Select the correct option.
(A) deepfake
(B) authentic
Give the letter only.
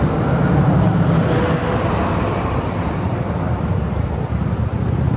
B